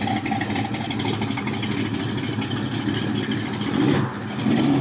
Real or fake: real